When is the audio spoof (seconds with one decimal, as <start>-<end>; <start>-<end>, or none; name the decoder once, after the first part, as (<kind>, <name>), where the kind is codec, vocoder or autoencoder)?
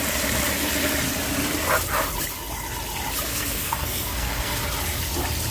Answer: 3.3-4.6 (codec, SNAC)